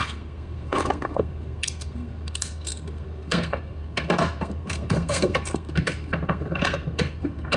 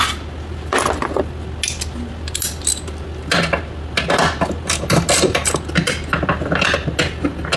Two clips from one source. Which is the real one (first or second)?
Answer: second